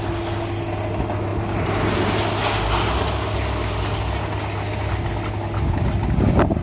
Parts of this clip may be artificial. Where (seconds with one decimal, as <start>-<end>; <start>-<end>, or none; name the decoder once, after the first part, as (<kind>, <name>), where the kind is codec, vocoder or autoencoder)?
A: none